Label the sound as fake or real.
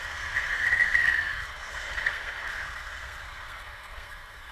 fake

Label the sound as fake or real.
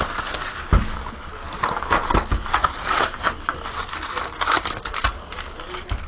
real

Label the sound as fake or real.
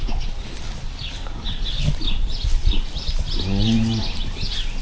real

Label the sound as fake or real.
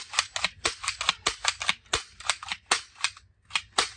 real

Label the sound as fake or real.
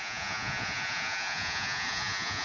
fake